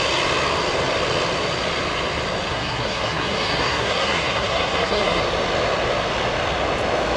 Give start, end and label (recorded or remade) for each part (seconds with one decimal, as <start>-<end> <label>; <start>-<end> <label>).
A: 0.0-2.5 recorded; 2.5-5.2 remade; 5.2-7.2 recorded